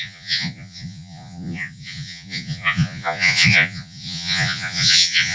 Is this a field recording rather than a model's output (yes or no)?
no